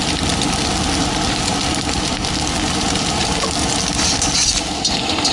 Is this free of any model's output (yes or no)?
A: yes